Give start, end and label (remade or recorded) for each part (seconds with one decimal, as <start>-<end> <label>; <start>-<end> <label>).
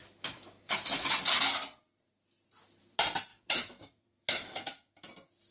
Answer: 0.0-1.1 remade; 1.1-3.3 recorded; 3.3-5.1 remade; 5.1-5.5 recorded